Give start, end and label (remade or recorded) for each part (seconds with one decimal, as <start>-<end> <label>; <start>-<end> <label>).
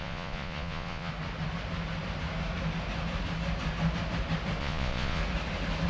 0.0-1.1 remade; 1.1-4.6 recorded; 4.6-5.2 remade; 5.2-5.9 recorded